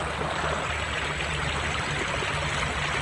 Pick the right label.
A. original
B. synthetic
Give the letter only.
A